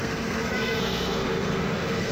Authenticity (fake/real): fake